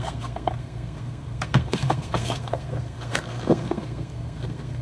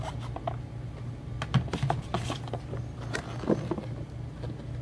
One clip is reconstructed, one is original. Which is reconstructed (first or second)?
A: first